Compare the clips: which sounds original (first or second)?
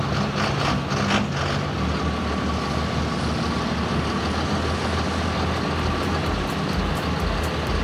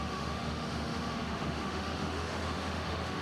first